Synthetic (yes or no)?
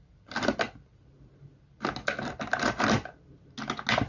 no